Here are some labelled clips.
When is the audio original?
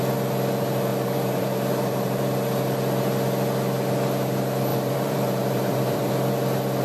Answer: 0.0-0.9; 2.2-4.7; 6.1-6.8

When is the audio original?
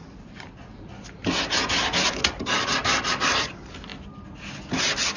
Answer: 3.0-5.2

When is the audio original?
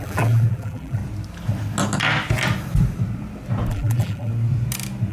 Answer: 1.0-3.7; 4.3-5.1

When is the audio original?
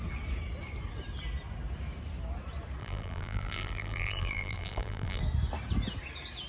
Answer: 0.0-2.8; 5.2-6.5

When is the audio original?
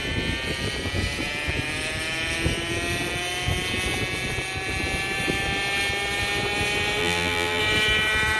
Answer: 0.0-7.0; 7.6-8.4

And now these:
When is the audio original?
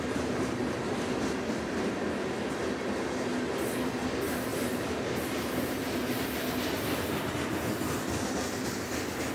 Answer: 0.0-4.5; 5.5-9.3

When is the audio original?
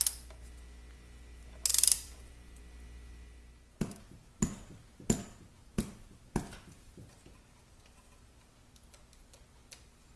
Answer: 0.0-1.7; 2.6-5.6; 6.3-10.2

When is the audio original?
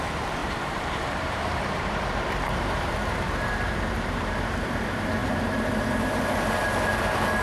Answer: 0.0-0.4; 4.8-5.2; 6.0-7.4